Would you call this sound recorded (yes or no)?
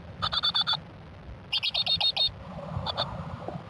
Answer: yes